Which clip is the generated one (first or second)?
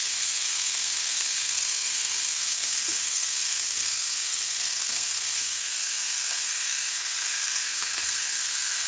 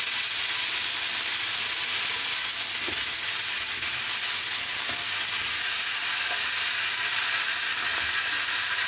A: first